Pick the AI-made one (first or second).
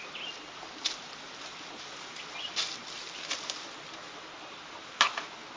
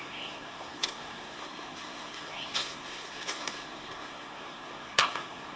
second